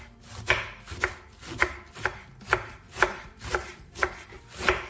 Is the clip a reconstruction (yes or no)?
no